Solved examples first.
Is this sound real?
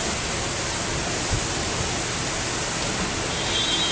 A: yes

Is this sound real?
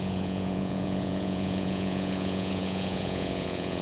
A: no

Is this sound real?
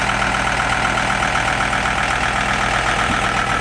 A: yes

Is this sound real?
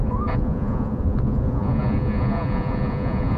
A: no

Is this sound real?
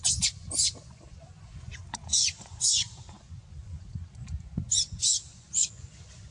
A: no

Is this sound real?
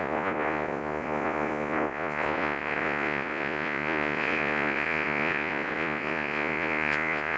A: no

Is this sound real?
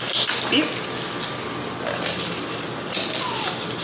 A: yes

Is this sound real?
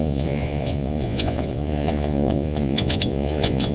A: no